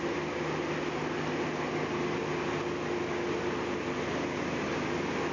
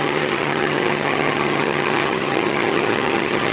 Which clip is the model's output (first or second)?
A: second